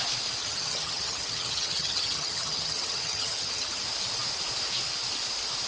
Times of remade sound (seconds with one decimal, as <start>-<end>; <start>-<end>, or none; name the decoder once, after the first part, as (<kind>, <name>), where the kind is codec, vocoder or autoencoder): 0.4-3.8 (vocoder, HiFi-GAN)